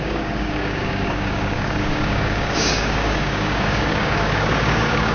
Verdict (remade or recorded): remade